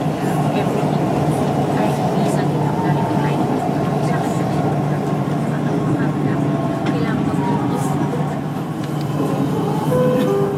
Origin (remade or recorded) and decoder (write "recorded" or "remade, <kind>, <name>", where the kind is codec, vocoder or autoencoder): recorded